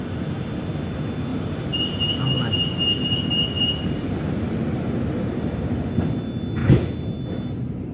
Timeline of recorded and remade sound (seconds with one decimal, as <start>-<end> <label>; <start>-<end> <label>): 0.0-1.3 recorded; 1.3-5.9 remade; 5.9-7.9 recorded